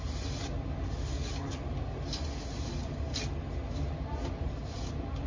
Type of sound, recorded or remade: recorded